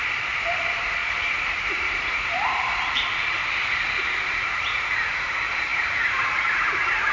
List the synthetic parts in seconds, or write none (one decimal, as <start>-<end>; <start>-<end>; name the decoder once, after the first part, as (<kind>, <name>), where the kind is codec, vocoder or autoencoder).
0.0-3.4 (vocoder, BigVGAN v2); 4.0-7.1